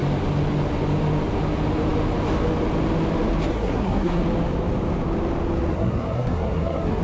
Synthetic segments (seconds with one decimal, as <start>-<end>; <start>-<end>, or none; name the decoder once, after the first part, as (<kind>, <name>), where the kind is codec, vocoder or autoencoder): 3.5-4.2 (codec, SNAC); 5.7-7.0